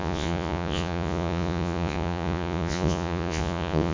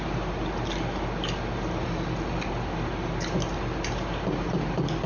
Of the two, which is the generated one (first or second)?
first